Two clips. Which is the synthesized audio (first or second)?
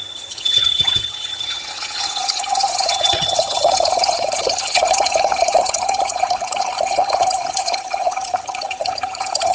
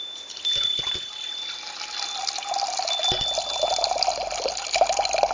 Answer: first